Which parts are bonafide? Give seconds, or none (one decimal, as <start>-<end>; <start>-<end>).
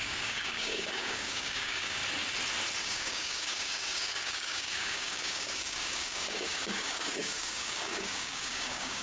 2.0-2.8